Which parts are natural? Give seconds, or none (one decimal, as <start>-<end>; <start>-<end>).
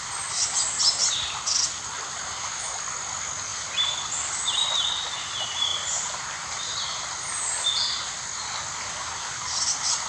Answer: 0.0-10.1